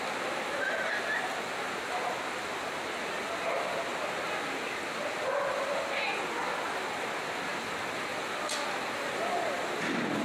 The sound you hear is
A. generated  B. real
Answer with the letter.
B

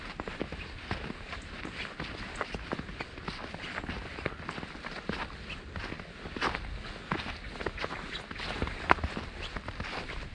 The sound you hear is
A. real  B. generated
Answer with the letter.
A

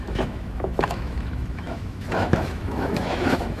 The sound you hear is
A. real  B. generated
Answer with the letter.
B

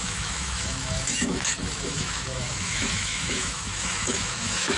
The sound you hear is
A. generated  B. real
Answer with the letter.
A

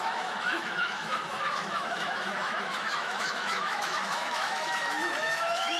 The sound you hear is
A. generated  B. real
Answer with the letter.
A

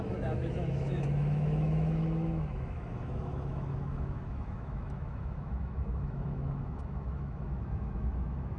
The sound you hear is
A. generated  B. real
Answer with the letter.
A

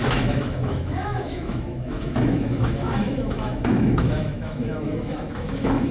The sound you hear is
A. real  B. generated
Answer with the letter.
B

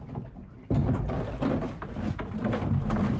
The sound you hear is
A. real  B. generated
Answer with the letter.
A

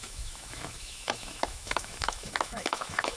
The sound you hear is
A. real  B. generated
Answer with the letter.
B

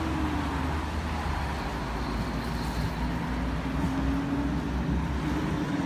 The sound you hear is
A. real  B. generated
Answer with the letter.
A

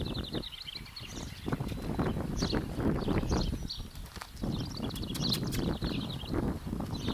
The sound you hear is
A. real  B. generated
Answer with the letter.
A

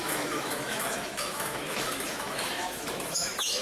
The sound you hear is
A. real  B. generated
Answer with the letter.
B